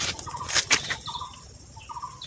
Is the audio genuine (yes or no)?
yes